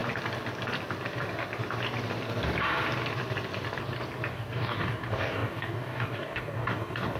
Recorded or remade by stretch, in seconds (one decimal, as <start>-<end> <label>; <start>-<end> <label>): 0.0-4.3 recorded; 4.3-7.2 remade